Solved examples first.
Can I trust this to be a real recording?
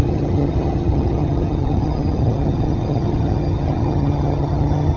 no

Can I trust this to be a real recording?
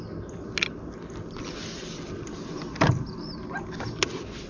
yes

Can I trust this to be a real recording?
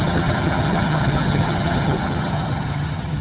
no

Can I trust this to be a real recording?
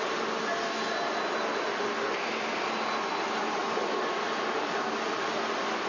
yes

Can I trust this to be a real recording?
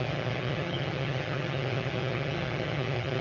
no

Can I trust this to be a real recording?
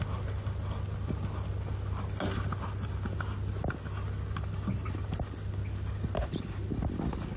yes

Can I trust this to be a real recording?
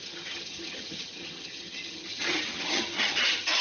no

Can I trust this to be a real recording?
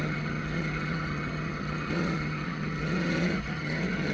no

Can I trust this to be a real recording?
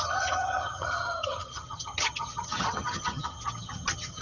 no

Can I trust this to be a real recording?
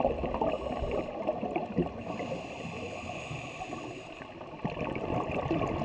yes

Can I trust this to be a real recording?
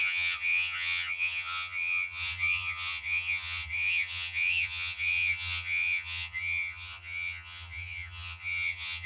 no